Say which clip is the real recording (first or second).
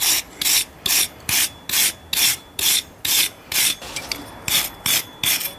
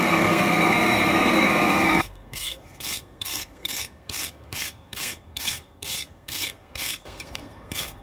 first